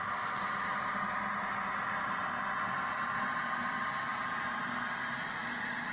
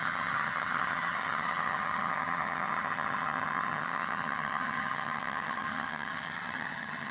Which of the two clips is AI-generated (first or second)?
second